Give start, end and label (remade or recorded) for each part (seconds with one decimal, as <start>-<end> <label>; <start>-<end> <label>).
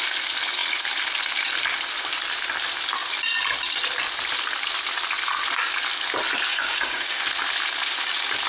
0.0-6.5 recorded; 6.5-7.2 remade; 7.2-8.5 recorded